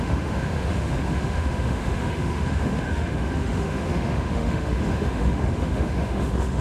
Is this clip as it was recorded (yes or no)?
no